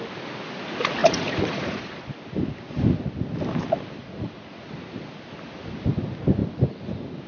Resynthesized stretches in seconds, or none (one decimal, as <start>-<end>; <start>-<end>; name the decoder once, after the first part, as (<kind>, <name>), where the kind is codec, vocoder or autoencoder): 1.0-1.8 (vocoder, Vocos); 4.0-4.7